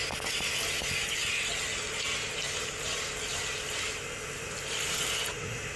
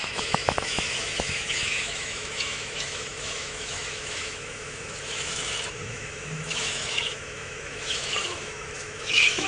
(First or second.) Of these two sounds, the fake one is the second